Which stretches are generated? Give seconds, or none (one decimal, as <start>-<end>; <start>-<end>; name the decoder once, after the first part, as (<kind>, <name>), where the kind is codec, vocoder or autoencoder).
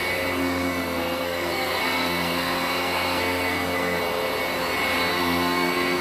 0.4-4.0 (codec, SNAC); 5.1-6.0